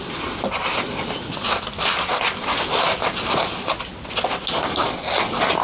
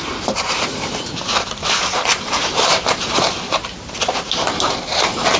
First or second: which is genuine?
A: first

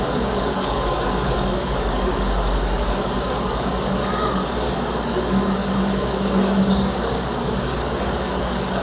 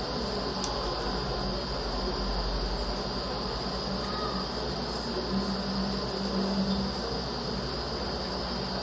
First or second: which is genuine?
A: second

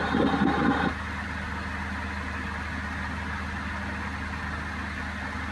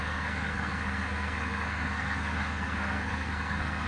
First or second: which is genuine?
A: first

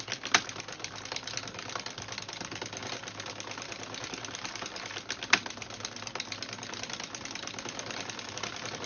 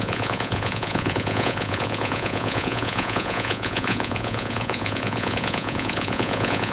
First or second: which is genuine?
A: first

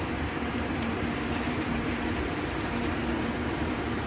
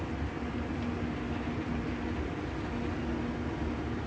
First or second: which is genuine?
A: second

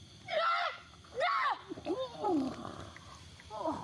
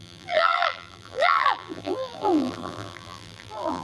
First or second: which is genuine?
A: first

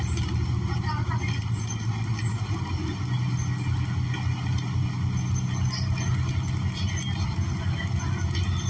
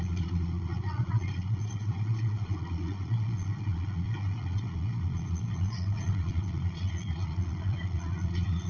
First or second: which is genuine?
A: first